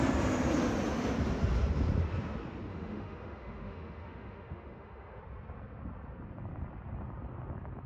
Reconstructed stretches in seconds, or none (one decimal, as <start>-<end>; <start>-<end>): 2.7-5.2